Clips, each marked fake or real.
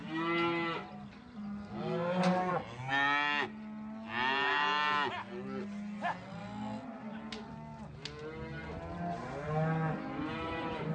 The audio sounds real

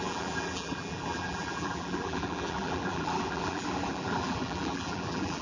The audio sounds fake